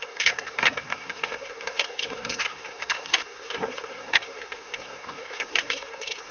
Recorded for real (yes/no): no